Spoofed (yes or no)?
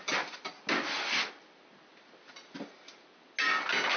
no